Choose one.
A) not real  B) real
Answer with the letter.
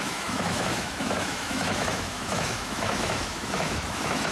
A